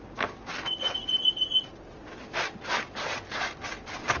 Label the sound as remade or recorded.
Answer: remade